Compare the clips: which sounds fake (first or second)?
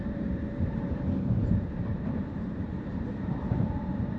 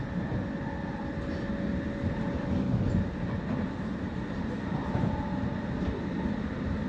first